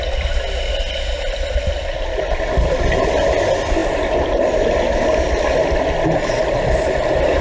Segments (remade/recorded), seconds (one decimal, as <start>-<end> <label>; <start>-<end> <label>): 0.0-7.4 recorded